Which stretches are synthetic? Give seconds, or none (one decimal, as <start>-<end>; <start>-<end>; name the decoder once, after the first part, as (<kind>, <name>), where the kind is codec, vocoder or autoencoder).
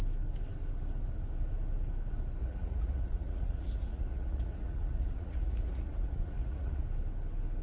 2.4-6.8 (vocoder, Vocos)